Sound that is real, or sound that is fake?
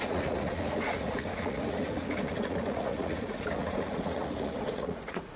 fake